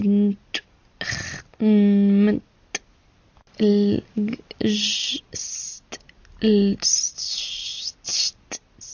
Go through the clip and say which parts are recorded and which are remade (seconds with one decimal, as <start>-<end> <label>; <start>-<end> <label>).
0.0-8.9 recorded